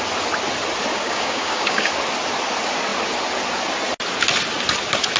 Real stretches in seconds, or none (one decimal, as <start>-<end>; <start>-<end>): 0.0-0.9; 1.9-5.2